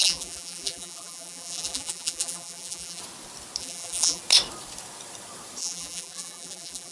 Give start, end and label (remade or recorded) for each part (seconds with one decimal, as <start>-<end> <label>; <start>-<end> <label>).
0.0-3.0 remade; 3.0-3.6 recorded; 3.6-4.2 remade; 4.2-5.6 recorded; 5.6-6.9 remade